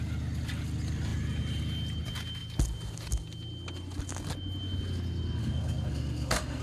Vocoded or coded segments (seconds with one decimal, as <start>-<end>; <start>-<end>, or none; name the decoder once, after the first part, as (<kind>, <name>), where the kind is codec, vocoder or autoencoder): 5.4-6.6 (codec, SNAC)